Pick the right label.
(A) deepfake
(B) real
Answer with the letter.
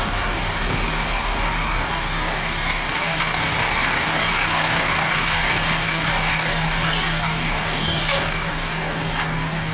A